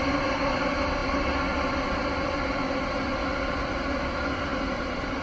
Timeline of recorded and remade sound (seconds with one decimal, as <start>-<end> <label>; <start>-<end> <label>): 0.0-5.2 recorded